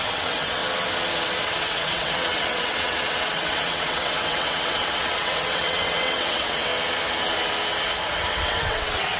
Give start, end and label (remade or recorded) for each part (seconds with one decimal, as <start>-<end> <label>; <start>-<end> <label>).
0.0-0.6 remade; 0.6-1.4 recorded; 1.4-6.7 remade; 6.7-8.4 recorded; 8.4-9.2 remade